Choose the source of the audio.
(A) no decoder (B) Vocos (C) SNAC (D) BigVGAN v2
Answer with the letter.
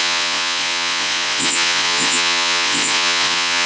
B